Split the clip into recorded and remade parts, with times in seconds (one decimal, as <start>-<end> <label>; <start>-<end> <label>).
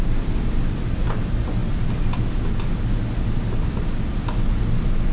0.0-5.1 recorded